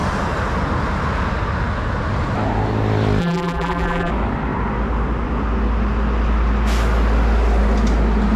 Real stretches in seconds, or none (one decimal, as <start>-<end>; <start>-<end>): 0.0-3.2; 4.1-8.4